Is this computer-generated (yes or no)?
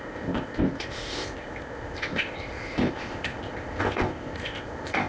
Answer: yes